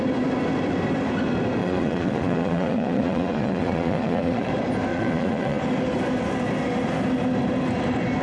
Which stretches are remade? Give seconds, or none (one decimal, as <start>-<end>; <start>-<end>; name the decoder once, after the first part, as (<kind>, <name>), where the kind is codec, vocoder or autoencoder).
1.6-4.5 (vocoder, Vocos); 4.9-5.6